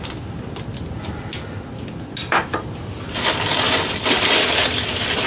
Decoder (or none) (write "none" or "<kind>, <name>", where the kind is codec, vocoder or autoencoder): none